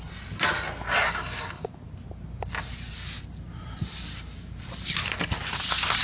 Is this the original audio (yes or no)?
yes